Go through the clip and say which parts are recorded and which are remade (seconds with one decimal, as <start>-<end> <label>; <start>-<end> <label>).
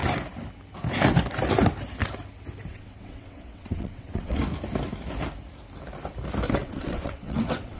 0.0-2.7 recorded; 2.7-4.4 remade; 4.4-6.6 recorded; 6.6-7.8 remade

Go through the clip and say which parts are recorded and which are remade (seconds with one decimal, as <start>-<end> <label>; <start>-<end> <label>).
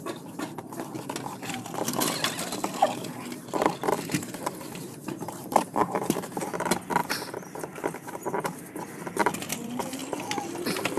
0.0-3.8 recorded; 3.8-6.2 remade; 6.2-7.0 recorded; 7.0-8.6 remade; 8.6-11.0 recorded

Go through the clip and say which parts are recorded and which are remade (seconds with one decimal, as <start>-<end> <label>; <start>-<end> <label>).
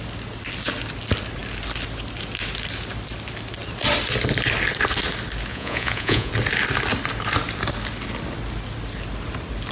0.0-5.5 recorded; 5.5-6.3 remade; 6.3-9.7 recorded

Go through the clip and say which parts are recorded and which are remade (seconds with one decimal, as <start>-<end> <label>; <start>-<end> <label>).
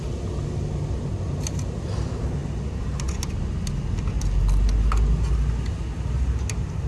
0.0-6.9 recorded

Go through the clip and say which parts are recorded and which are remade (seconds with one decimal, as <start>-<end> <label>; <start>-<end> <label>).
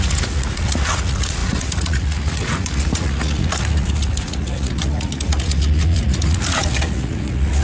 0.0-7.6 remade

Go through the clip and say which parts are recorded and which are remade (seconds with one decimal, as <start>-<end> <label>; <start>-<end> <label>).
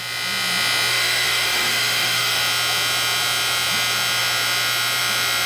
0.0-0.9 recorded; 0.9-2.4 remade; 2.4-5.5 recorded